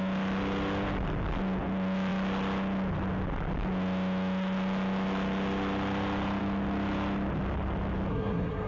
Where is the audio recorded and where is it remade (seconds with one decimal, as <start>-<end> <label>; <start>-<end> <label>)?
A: 0.0-8.1 recorded; 8.1-8.7 remade